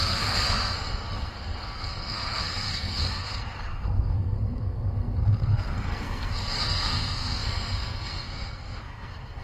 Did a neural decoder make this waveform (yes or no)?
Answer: yes